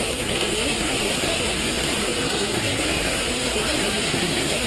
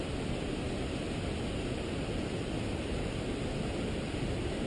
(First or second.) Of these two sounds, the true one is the second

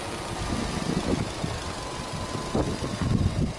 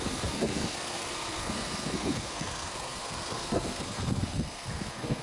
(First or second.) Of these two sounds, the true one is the first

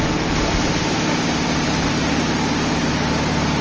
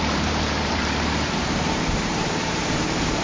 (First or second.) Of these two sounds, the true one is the first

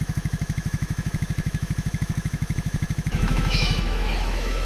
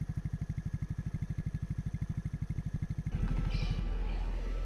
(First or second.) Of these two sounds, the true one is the second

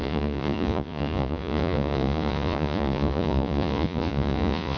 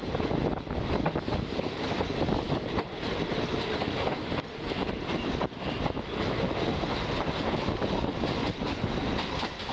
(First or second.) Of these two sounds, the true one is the second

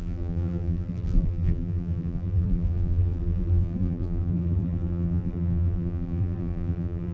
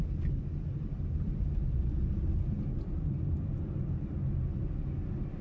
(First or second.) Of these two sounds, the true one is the second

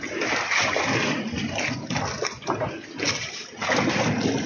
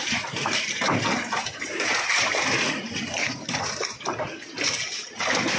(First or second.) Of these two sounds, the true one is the first